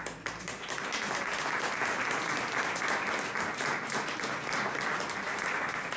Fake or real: real